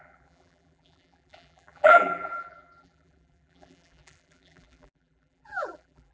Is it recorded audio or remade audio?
remade